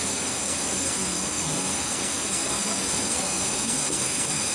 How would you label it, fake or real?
fake